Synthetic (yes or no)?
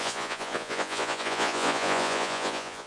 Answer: yes